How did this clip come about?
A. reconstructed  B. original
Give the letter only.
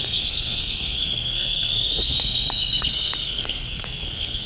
A